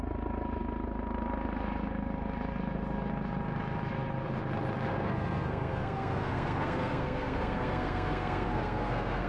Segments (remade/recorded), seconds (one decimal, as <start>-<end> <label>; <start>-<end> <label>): 0.0-4.9 recorded; 4.9-9.3 remade